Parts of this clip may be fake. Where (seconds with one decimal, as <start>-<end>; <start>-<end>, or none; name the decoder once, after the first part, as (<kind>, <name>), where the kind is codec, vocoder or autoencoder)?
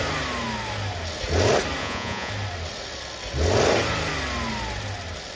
1.8-2.3 (vocoder, Vocos)